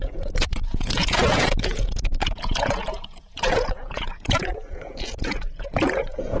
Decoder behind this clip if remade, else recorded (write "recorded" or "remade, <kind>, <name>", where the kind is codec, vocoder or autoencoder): remade, vocoder, Vocos